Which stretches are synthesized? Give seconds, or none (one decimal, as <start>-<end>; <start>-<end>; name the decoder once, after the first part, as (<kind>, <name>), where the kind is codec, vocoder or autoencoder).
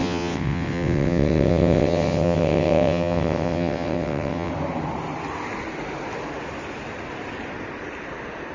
0.0-4.5 (vocoder, WaveNeXt)